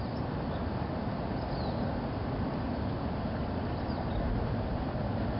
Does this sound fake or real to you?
real